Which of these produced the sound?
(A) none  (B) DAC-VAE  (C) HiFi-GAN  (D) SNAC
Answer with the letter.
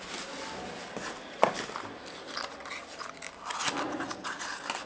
A